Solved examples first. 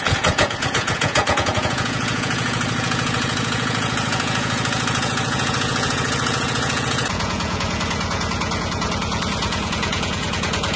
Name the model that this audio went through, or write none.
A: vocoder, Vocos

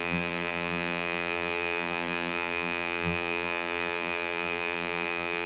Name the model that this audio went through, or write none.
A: vocoder, BigVGAN v2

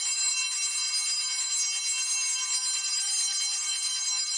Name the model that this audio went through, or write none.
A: none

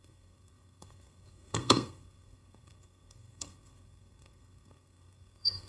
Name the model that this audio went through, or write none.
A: codec, SNAC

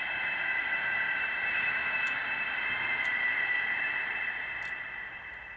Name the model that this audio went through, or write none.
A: none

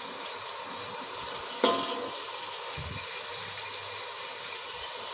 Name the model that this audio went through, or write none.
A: none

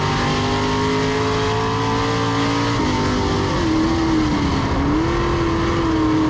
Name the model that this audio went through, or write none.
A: none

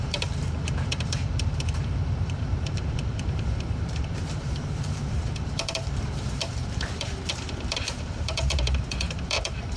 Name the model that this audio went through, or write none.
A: vocoder, BigVGAN v2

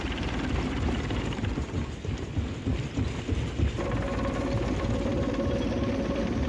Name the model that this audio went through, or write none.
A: none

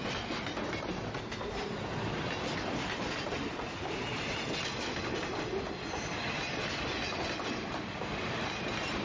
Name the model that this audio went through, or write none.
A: none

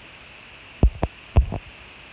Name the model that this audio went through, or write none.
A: none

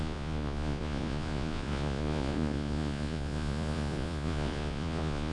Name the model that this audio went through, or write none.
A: vocoder, Vocos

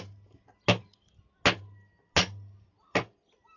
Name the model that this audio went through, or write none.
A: none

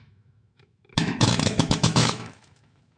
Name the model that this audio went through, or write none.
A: autoencoder, DAC-VAE